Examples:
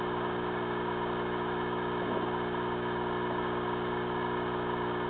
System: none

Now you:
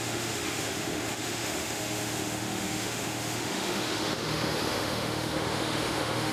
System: autoencoder, DAC-VAE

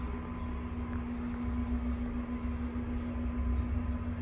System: none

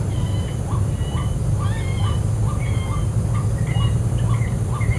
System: none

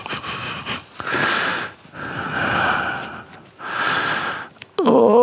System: none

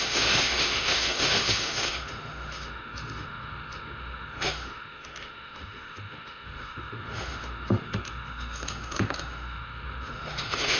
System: autoencoder, DAC-VAE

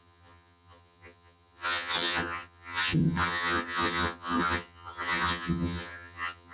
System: vocoder, HiFi-GAN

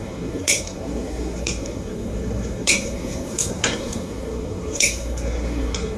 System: codec, SNAC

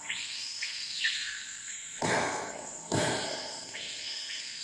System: codec, SNAC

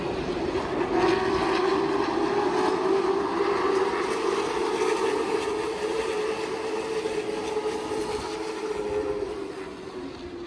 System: none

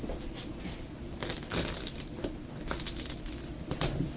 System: vocoder, BigVGAN v2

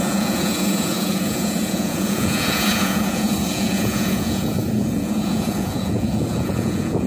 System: vocoder, Vocos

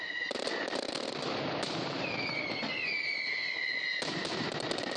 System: none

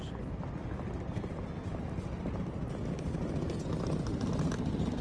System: none